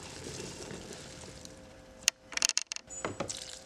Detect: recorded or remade remade